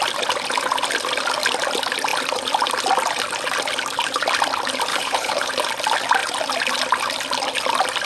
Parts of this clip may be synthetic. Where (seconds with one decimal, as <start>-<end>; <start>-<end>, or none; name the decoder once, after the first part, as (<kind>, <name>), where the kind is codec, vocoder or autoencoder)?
4.9-5.5 (codec, HILCodec)